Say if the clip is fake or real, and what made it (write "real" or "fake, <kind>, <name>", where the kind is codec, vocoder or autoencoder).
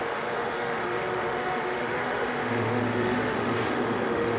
fake, autoencoder, DAC-VAE